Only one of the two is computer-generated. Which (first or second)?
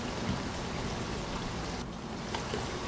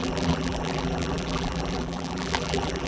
second